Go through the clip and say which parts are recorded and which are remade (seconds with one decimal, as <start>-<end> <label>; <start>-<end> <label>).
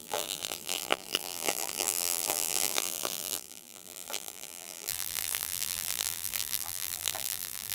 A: 0.0-7.7 remade